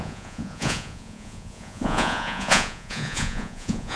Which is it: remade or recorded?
remade